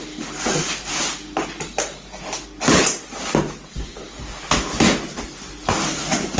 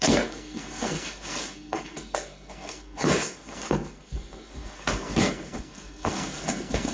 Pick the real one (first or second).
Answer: first